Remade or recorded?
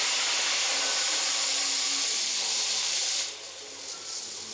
recorded